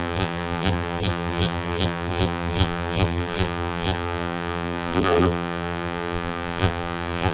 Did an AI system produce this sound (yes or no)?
yes